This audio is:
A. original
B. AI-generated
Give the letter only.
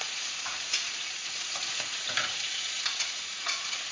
B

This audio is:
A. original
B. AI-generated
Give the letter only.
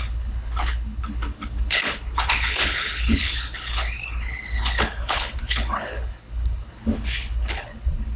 B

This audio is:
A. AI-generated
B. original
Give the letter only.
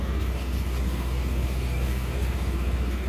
A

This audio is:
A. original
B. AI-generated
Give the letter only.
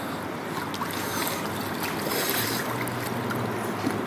A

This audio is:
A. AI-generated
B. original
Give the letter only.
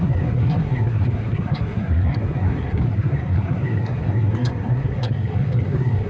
A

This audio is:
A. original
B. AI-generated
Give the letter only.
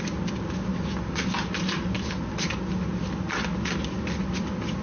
A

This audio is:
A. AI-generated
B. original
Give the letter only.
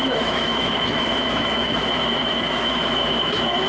A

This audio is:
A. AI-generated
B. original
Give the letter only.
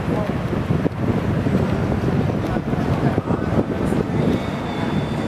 B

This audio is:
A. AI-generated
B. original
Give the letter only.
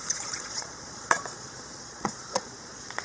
A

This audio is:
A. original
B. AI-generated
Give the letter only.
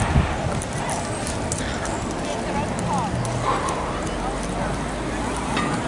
A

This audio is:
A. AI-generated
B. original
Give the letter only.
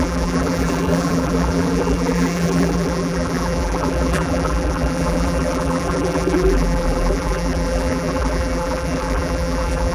A